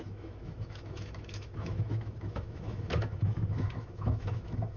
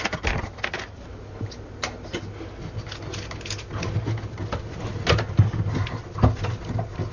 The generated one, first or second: first